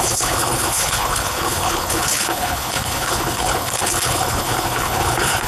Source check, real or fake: fake